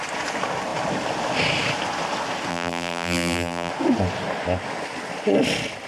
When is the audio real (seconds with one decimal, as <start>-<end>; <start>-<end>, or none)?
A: 0.0-2.5; 3.7-5.9